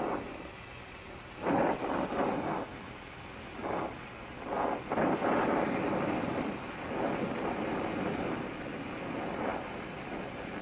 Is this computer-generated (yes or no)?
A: no